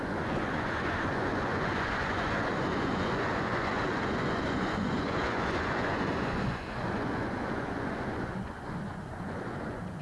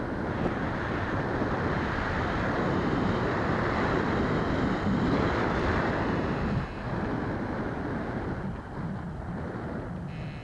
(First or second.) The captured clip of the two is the second